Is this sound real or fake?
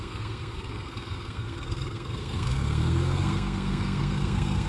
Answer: fake